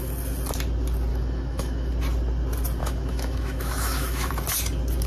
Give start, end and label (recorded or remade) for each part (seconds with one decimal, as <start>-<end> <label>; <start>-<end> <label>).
0.0-1.1 recorded; 1.1-1.9 remade; 1.9-2.8 recorded; 2.8-4.3 remade; 4.3-5.1 recorded

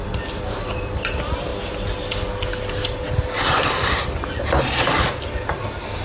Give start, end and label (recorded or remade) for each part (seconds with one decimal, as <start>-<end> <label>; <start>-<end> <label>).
0.0-6.0 recorded

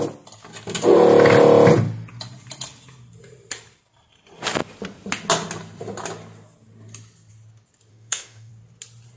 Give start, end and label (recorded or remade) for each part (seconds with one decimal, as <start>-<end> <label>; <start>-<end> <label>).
0.0-7.9 recorded; 7.9-8.5 remade; 8.5-9.2 recorded

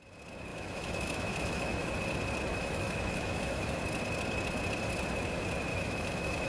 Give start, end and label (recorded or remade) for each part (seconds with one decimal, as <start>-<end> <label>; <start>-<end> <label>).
0.0-0.5 recorded; 0.5-1.9 remade; 1.9-2.5 recorded; 2.5-3.8 remade; 3.8-5.7 recorded; 5.7-6.5 remade

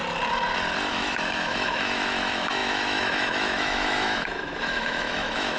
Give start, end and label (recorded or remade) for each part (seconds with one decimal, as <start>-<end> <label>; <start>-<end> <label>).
0.0-0.9 recorded; 0.9-5.6 remade

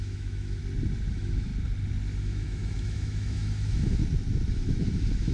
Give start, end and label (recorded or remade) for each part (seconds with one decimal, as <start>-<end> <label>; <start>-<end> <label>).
0.0-0.6 remade; 0.6-1.1 recorded; 1.1-1.5 remade; 1.5-2.2 recorded; 2.2-4.0 remade; 4.0-4.5 recorded; 4.5-5.3 remade

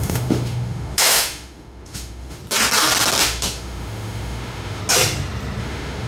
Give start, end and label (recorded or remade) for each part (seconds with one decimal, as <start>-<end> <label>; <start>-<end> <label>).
0.0-2.4 remade; 2.4-3.2 recorded; 3.2-4.8 remade; 4.8-5.6 recorded; 5.6-6.1 remade